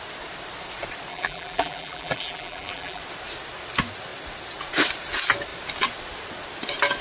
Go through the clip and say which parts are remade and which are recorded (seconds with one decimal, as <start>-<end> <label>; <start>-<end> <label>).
0.0-1.1 recorded; 1.1-3.0 remade; 3.0-7.0 recorded